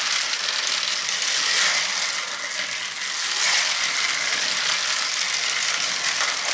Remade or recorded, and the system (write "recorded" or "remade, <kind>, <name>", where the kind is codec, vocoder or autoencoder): recorded